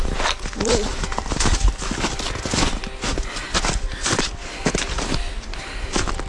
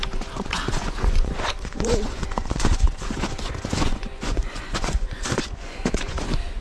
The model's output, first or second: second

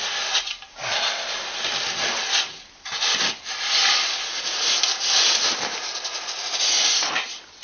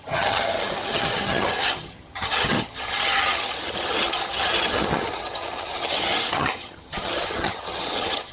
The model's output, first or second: second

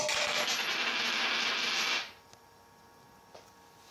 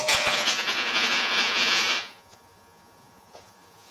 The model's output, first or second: second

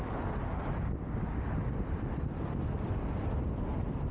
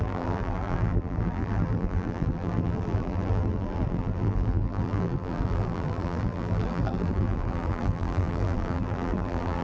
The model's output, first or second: second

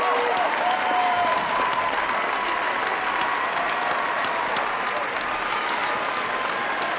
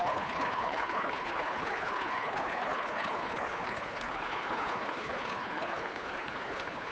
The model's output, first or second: second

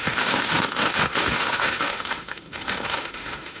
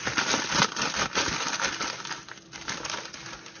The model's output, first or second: first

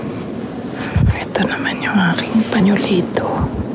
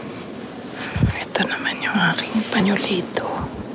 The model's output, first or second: second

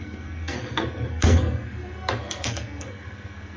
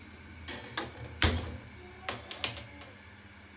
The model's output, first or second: first